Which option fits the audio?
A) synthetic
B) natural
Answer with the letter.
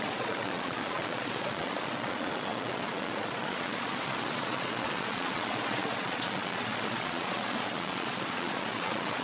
A